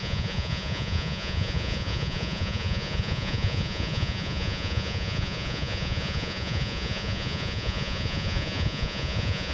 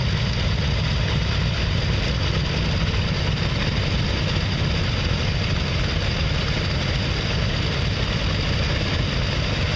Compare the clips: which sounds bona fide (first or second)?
second